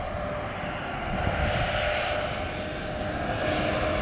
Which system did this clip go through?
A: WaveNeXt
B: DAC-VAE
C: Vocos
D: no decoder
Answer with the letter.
D